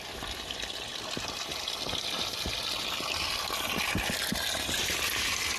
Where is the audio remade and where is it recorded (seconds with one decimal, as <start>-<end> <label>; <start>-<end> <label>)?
0.0-5.6 recorded